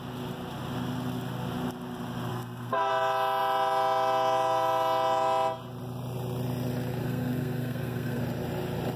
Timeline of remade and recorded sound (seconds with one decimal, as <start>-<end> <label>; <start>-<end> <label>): 0.0-2.3 recorded; 2.3-2.9 remade; 2.9-7.0 recorded; 7.0-8.2 remade; 8.2-9.0 recorded